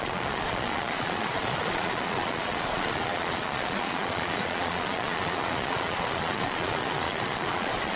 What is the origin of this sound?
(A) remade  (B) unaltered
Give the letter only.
A